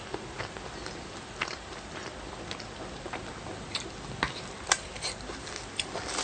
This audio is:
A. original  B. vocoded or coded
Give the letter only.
A